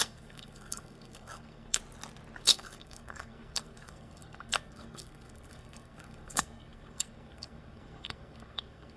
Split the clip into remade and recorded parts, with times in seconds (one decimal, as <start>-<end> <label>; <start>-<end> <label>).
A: 0.0-1.8 remade; 1.8-2.4 recorded; 2.4-9.0 remade